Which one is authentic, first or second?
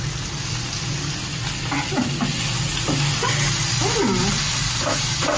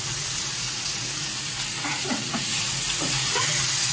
first